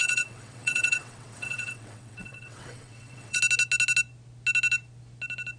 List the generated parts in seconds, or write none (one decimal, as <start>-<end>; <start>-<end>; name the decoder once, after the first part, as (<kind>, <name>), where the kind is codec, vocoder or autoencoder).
0.0-3.4 (vocoder, WaveNeXt)